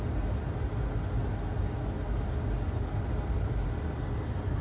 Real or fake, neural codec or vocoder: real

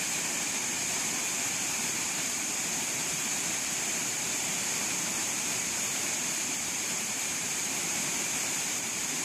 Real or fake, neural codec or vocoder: fake, vocoder, BigVGAN v2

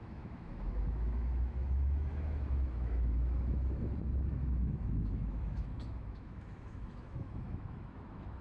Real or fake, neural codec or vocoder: fake, autoencoder, DAC-VAE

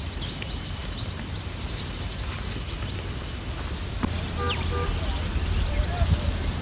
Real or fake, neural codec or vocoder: real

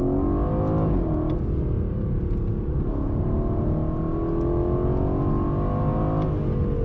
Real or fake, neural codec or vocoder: real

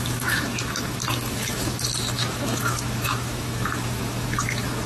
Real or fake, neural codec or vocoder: fake, autoencoder, DAC-VAE